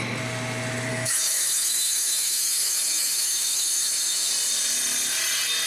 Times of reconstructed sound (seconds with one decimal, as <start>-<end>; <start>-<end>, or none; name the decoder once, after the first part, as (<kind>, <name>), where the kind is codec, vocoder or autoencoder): 0.9-4.3 (autoencoder, DAC-VAE)